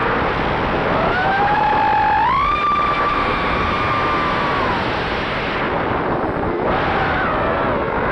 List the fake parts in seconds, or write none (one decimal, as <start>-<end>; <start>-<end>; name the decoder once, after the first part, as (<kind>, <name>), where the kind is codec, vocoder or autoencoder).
3.1-3.7 (codec, SNAC)